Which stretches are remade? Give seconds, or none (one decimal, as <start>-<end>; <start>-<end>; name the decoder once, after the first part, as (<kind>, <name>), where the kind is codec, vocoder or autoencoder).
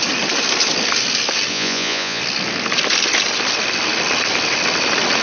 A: 1.5-2.2 (vocoder, Vocos)